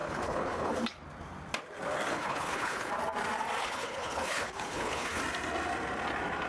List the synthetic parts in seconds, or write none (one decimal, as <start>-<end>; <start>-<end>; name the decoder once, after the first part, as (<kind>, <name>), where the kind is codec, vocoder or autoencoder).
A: 0.0-0.7 (codec, HILCodec); 2.1-2.9; 3.6-5.2